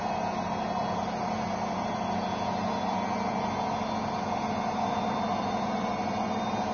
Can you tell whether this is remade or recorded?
recorded